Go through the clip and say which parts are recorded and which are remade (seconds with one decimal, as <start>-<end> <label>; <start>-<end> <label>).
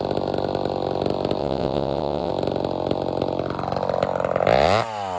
0.0-1.4 recorded; 1.4-2.3 remade; 2.3-5.2 recorded